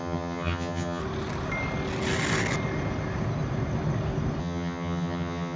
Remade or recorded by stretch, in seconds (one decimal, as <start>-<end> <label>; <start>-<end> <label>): 0.0-1.0 remade; 1.0-4.4 recorded; 4.4-5.6 remade

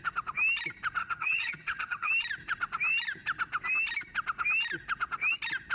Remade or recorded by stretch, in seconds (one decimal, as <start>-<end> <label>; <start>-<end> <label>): 0.0-1.0 recorded; 1.0-2.1 remade; 2.1-5.7 recorded